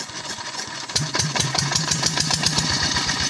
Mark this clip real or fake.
fake